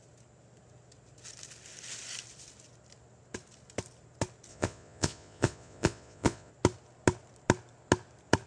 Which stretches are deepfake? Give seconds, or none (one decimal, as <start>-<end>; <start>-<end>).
4.5-6.5